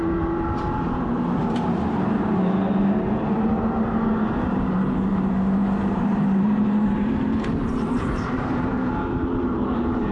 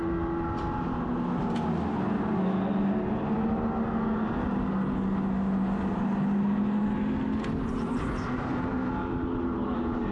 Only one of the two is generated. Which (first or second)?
first